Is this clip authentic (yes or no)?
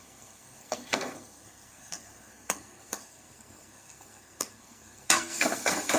no